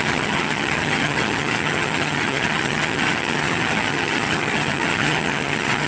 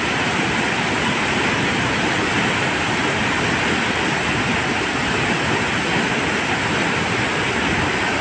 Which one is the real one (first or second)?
second